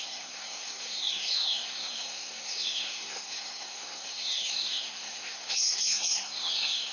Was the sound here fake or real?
fake